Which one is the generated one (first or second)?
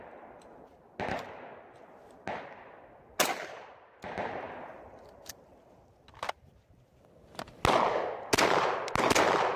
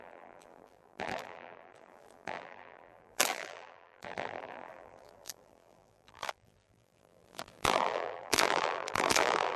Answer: second